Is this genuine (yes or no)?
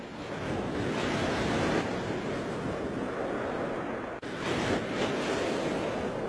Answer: yes